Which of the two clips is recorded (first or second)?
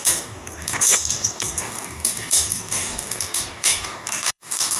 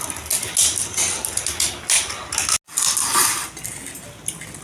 second